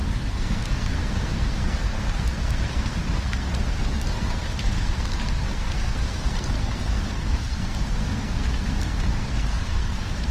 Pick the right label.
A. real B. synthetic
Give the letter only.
B